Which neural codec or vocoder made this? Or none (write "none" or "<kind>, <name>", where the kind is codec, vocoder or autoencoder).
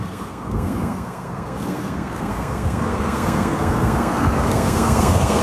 codec, SNAC